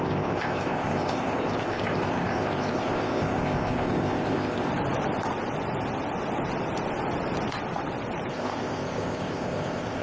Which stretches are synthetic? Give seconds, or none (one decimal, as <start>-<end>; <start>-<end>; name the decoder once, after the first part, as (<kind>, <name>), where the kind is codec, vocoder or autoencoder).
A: 0.0-4.7 (codec, ZipCodec); 8.3-10.0